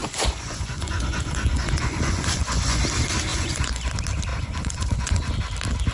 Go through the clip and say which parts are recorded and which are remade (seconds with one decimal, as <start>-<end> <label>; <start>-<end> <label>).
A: 0.0-2.8 remade; 2.8-3.3 recorded; 3.3-3.9 remade; 3.9-4.3 recorded; 4.3-5.3 remade; 5.3-5.9 recorded